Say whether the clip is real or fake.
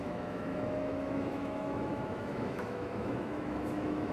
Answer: fake